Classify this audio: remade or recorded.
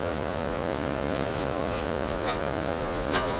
remade